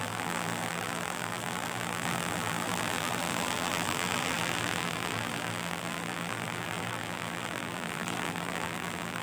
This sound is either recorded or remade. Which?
remade